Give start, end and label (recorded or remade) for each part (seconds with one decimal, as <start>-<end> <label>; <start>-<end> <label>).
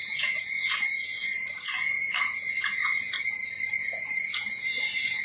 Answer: 0.0-3.1 remade; 3.1-3.8 recorded; 3.8-5.2 remade